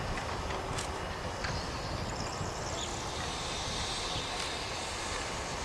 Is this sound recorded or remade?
recorded